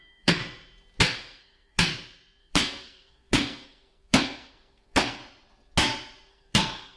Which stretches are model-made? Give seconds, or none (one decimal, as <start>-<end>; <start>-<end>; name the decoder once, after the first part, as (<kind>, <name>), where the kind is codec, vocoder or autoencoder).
0.0-0.4 (codec, SNAC); 1.0-1.9; 2.4-5.2; 6.3-7.0